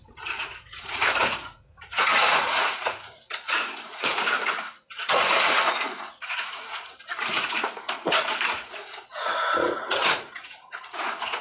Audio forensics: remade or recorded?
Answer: remade